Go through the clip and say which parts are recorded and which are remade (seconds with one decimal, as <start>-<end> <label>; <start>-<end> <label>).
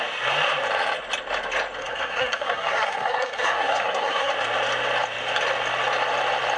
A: 0.0-1.8 recorded; 1.8-4.3 remade; 4.3-6.6 recorded